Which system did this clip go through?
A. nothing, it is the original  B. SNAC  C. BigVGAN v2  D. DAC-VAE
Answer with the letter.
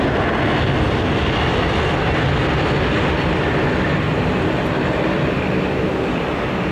A